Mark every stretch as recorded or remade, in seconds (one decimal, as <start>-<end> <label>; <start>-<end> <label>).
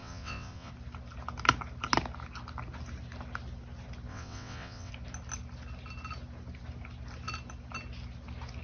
0.0-0.7 remade; 0.7-4.1 recorded; 4.1-4.9 remade; 4.9-8.6 recorded